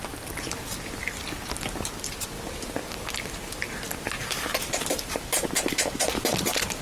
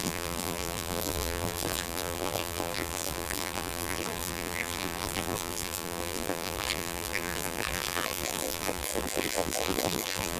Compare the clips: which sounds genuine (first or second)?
first